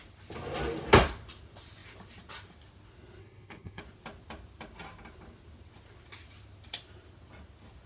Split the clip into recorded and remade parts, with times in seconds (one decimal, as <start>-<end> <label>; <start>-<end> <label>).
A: 0.0-3.2 recorded; 3.2-3.8 remade; 3.8-7.9 recorded